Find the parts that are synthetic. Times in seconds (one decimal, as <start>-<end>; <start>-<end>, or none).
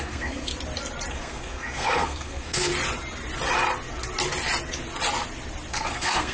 0.0-0.5; 1.1-2.7; 5.7-6.3